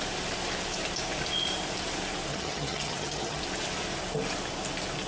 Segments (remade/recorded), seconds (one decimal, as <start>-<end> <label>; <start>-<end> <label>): 0.0-2.3 recorded; 2.3-3.4 remade; 3.4-5.1 recorded